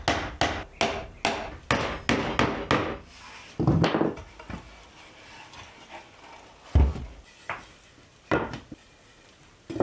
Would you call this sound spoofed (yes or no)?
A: no